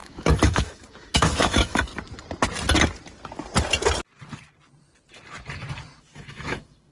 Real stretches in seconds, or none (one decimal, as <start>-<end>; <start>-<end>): 1.9-6.0